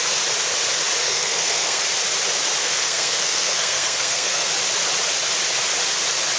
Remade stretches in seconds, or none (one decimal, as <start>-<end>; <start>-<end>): 1.0-1.8; 2.6-4.5